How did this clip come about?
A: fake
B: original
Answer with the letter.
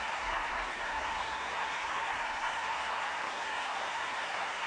A